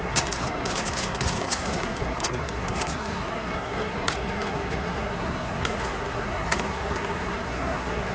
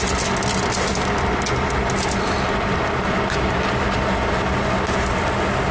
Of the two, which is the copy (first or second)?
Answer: first